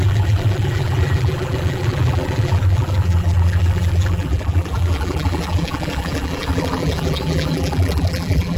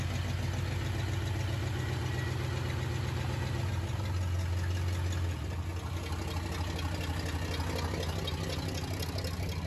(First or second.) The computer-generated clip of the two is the first